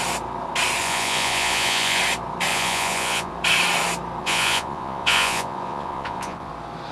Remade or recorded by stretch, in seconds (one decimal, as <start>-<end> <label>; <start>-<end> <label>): 0.0-0.8 recorded; 0.8-2.0 remade; 2.0-2.5 recorded; 2.5-3.3 remade; 3.3-4.2 recorded; 4.2-6.5 remade; 6.5-6.9 recorded